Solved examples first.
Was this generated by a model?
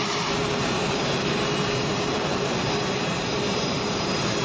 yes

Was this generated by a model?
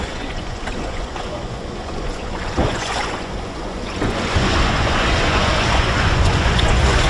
yes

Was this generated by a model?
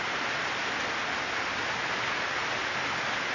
no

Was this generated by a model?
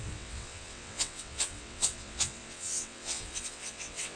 yes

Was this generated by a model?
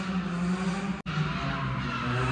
no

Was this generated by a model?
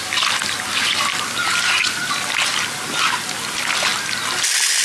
no